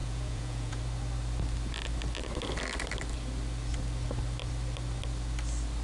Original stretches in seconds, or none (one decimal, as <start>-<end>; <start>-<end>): 0.8-5.8